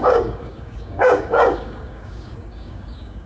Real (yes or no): no